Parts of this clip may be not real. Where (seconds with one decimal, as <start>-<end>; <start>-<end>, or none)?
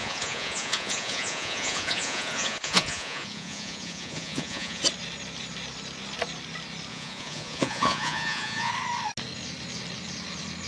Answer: 0.0-4.8; 6.9-8.7